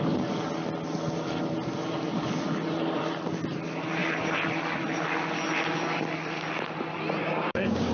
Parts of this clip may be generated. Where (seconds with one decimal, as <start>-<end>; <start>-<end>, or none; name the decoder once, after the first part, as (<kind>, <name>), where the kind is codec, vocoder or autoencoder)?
7.2-7.9 (codec, DAC)